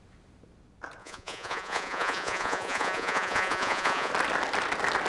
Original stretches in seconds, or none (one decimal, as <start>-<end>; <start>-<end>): 0.0-1.0; 4.1-5.1